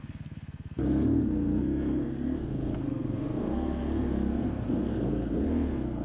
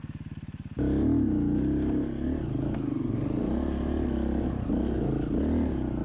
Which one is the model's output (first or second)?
first